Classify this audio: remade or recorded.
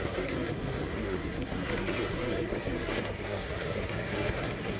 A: remade